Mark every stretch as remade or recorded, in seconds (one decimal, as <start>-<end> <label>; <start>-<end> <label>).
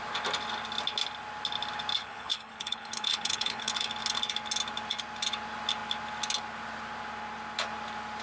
0.0-2.0 recorded; 2.0-3.7 remade; 3.7-8.2 recorded